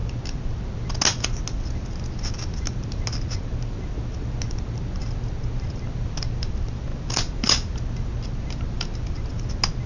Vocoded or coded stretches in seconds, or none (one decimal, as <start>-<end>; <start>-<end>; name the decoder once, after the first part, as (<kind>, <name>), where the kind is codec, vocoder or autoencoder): none